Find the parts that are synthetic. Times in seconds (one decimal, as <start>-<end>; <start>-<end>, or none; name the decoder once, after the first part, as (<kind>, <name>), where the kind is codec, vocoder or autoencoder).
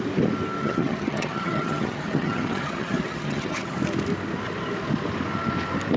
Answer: 0.6-3.8 (vocoder, HiFi-GAN)